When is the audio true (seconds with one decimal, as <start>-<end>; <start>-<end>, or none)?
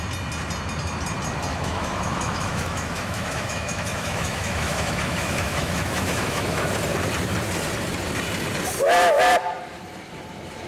0.0-1.5; 6.7-10.7